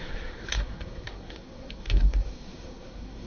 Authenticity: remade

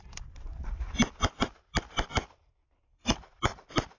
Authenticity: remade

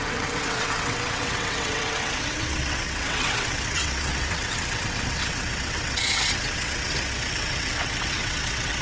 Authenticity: remade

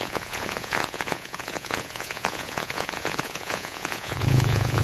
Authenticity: remade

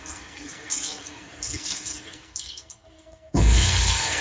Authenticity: remade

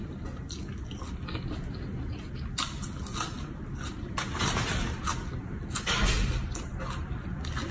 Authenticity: recorded